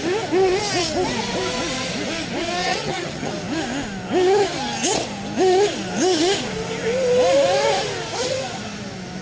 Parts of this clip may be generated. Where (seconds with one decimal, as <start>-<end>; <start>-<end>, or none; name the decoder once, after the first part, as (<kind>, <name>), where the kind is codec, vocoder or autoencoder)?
2.6-3.3 (vocoder, HiFi-GAN)